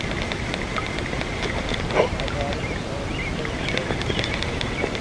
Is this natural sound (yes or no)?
yes